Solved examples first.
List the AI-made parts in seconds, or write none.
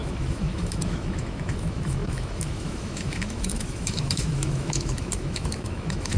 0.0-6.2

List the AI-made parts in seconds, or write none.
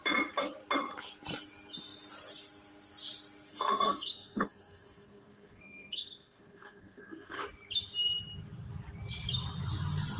3.5-7.4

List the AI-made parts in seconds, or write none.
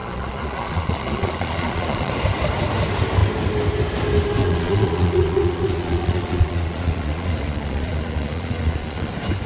0.0-2.1; 4.4-9.1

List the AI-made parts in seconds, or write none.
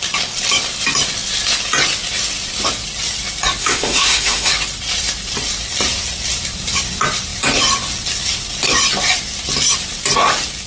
3.6-4.5